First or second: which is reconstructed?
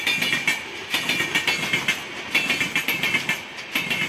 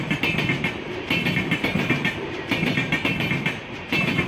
second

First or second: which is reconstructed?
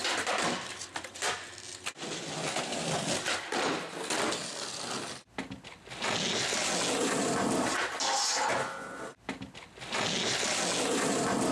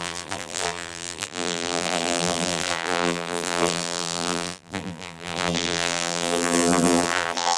second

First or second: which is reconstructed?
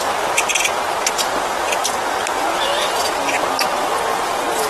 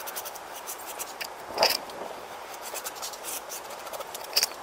second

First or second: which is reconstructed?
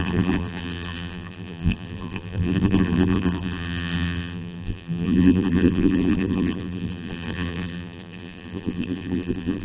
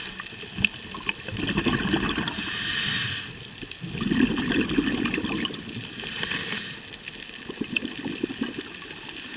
first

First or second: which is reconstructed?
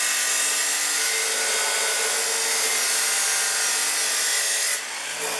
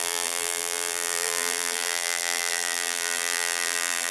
second